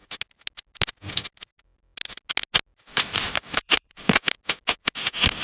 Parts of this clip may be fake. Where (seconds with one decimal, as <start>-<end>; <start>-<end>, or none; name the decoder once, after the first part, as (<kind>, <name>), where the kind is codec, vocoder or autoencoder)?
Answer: 2.9-4.2 (vocoder, BigVGAN v2)